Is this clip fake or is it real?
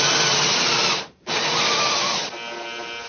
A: real